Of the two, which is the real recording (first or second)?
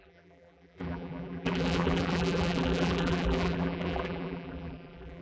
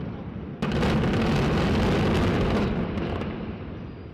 second